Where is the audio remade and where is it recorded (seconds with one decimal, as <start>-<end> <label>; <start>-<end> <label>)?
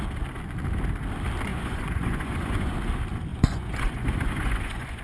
0.0-1.5 recorded; 1.5-2.7 remade; 2.7-3.3 recorded; 3.3-5.0 remade